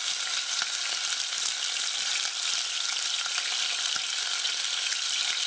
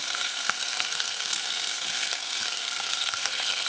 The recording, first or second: first